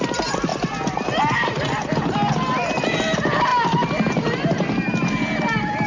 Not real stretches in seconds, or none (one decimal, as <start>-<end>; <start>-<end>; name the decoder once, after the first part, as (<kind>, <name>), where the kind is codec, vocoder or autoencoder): none